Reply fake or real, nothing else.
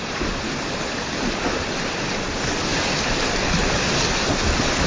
real